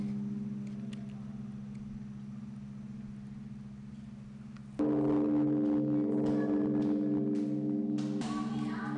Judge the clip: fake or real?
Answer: real